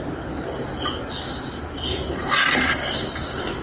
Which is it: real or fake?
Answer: real